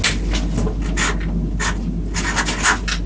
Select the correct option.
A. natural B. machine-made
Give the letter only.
A